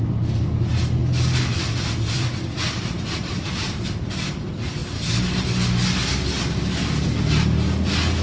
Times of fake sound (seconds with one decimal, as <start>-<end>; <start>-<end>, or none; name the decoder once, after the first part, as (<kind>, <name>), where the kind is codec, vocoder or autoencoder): 1.0-3.6 (vocoder, BigVGAN v2)

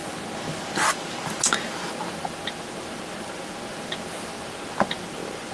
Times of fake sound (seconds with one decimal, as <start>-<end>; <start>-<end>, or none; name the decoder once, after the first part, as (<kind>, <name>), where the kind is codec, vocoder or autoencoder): none

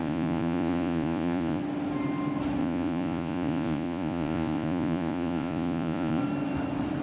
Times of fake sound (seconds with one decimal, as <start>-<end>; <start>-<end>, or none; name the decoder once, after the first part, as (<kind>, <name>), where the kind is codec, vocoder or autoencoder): 0.0-1.6 (vocoder, Vocos); 2.6-6.2